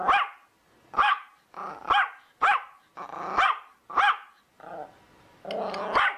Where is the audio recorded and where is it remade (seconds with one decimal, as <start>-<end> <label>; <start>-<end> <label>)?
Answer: 0.0-6.2 recorded